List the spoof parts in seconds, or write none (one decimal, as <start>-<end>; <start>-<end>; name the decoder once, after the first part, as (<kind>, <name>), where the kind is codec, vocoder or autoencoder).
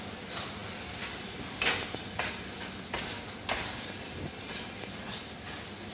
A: none